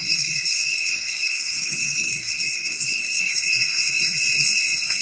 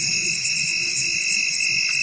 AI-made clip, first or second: first